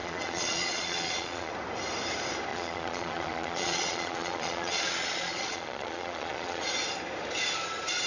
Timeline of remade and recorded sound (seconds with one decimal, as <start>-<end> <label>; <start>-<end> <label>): 0.0-1.5 remade; 1.5-2.5 recorded; 2.5-6.6 remade; 6.6-8.1 recorded